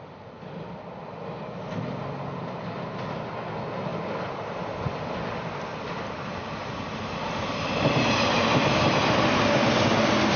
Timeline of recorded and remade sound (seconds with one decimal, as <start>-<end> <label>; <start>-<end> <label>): 0.0-10.4 recorded